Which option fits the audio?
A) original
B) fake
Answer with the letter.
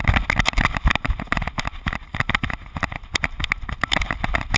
A